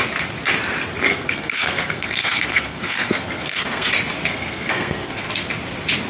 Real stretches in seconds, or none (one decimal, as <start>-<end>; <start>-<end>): 0.0-1.1; 3.9-4.3; 5.3-6.1

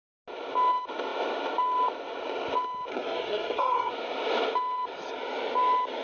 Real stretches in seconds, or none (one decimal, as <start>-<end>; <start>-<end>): 0.0-2.9; 3.9-6.0

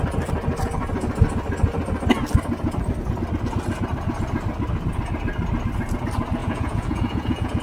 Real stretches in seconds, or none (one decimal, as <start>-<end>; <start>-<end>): 0.0-6.4

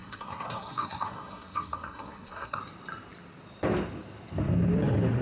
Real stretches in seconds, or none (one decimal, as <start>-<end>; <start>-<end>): 2.6-5.2

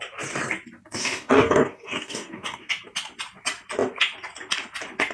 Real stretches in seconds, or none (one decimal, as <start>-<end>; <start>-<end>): 0.0-1.0; 2.7-5.1